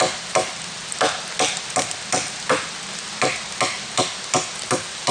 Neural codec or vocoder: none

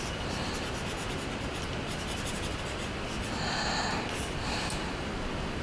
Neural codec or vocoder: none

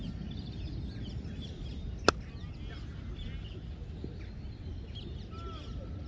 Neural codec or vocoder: none